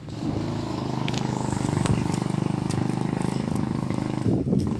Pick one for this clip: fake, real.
fake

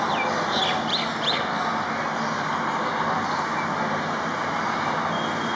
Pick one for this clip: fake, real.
real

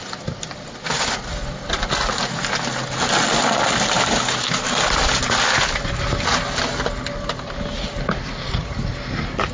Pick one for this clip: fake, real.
real